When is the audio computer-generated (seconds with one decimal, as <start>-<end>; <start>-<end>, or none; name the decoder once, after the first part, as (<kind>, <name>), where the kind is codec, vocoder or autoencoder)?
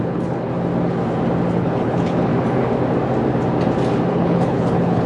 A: 0.0-0.5 (codec, HILCodec); 1.5-2.3; 4.1-5.1